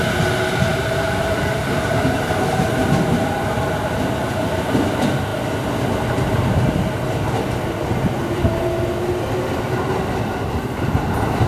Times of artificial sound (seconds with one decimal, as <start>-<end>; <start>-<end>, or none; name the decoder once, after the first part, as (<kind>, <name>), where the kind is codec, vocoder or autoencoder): none